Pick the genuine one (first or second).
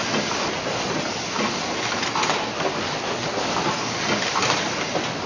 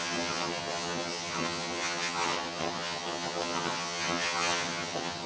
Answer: first